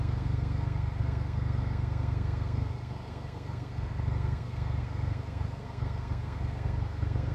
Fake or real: fake